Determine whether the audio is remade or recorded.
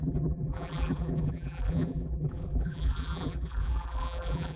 remade